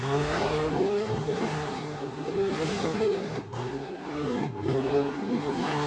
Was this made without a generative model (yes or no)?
no